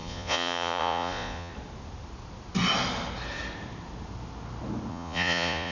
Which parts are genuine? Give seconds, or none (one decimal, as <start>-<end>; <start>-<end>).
1.5-4.9